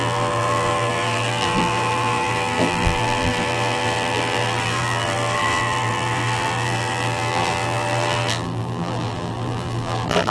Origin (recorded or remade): remade